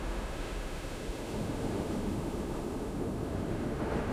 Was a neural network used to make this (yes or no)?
yes